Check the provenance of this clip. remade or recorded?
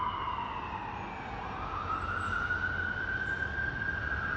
recorded